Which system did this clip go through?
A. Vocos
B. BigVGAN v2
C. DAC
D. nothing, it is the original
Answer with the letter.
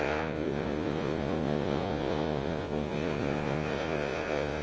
A